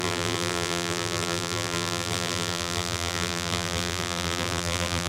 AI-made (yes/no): yes